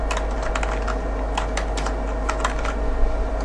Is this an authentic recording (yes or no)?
yes